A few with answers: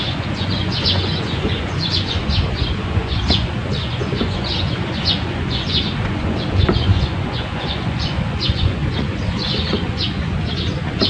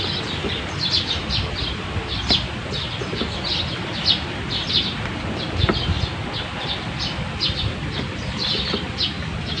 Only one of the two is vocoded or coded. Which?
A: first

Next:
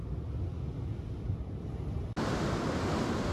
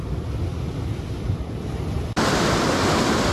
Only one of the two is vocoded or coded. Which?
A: second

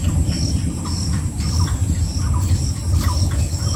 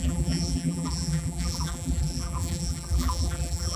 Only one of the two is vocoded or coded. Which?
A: second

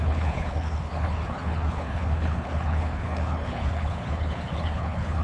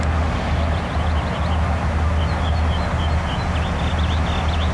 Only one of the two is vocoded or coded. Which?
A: first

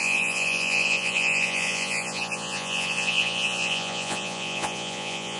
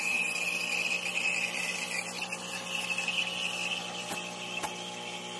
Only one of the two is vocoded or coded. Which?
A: first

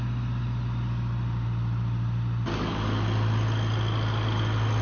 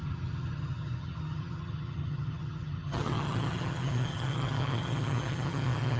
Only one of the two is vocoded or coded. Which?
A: second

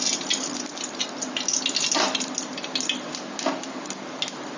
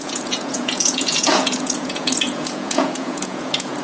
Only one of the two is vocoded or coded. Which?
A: second